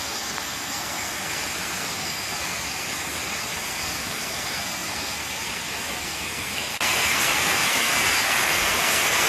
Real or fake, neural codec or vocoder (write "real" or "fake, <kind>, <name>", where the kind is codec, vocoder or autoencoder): fake, codec, SNAC